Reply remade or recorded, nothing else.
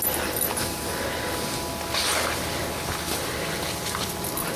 recorded